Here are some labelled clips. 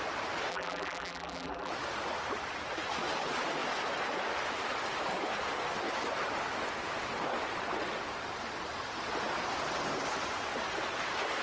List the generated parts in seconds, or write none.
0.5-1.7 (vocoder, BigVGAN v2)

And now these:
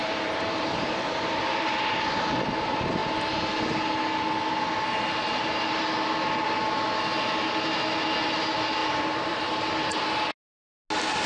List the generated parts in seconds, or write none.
0.0-2.4 (vocoder, BigVGAN v2); 8.8-9.7

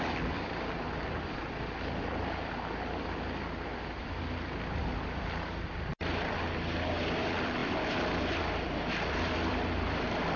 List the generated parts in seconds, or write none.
0.0-6.1 (vocoder, BigVGAN v2); 7.0-10.4

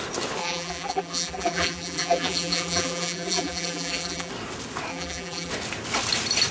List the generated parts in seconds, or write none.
0.4-4.3 (vocoder, BigVGAN v2); 4.9-5.5

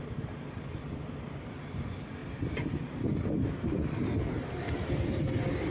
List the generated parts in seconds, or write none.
0.8-1.6 (vocoder, BigVGAN v2); 2.2-5.7

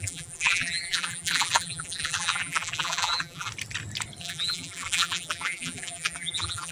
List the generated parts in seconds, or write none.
0.0-3.5 (vocoder, BigVGAN v2); 4.2-6.7

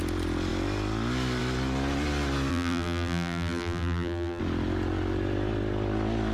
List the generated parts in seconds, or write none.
2.5-4.4 (vocoder, BigVGAN v2)